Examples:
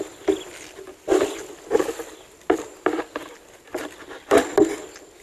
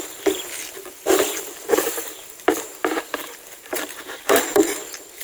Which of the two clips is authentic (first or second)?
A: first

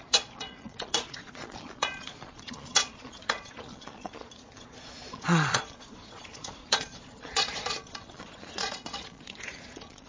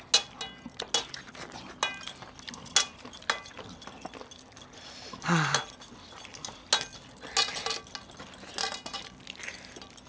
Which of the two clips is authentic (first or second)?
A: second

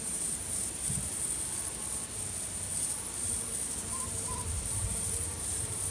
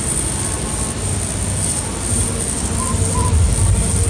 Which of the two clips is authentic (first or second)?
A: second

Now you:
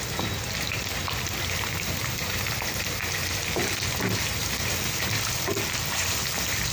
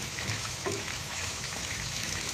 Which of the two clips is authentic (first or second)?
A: first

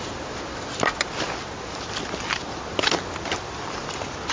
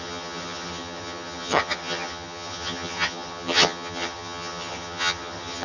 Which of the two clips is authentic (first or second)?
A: first